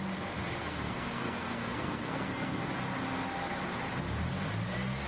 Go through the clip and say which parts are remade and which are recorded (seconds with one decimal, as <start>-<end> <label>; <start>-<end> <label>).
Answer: 0.0-0.6 recorded; 0.6-2.7 remade; 2.7-5.1 recorded